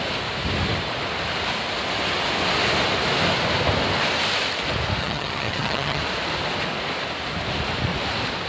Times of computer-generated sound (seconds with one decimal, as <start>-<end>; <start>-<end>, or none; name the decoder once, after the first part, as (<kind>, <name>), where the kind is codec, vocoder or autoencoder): 5.0-6.0 (vocoder, HiFi-GAN)